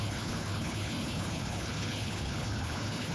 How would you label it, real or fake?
fake